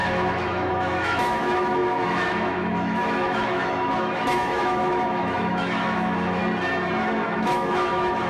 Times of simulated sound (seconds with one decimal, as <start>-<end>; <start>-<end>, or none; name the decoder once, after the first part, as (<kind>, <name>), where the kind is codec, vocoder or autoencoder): 0.0-6.4 (autoencoder, DAC-VAE); 7.0-8.3